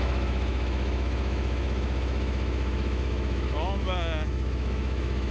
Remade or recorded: remade